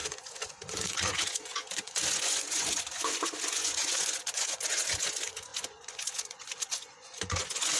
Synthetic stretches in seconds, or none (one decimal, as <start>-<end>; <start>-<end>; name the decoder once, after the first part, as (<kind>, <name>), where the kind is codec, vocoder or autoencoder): 0.0-7.8 (vocoder, Vocos)